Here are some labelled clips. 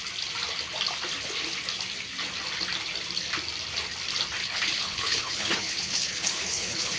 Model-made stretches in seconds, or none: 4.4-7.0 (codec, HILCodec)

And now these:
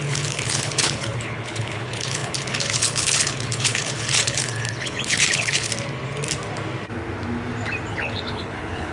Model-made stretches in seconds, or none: 0.0-5.7 (codec, HILCodec); 7.9-8.9

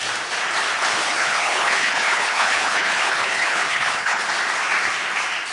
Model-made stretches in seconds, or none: 0.9-4.2 (codec, HILCodec)

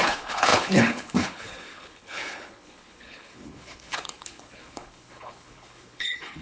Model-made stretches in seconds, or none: 0.0-6.4 (codec, HILCodec)

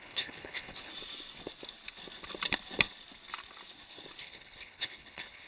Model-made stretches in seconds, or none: 0.0-0.9 (codec, HILCodec); 4.2-5.5

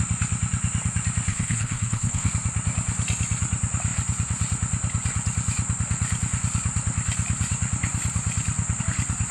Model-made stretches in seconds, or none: 1.3-2.3 (codec, HILCodec)